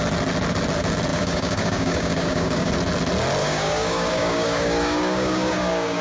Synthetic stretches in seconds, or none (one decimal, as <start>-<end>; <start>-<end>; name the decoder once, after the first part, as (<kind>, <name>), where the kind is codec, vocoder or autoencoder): 1.1-2.7 (codec, DAC); 3.4-6.0